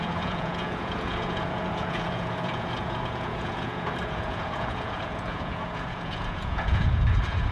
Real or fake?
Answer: fake